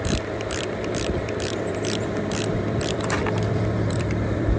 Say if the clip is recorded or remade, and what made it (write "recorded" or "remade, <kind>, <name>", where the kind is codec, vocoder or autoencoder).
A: remade, vocoder, BigVGAN v2